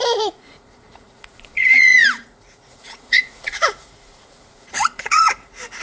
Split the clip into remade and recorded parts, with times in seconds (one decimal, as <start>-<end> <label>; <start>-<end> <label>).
0.0-5.8 remade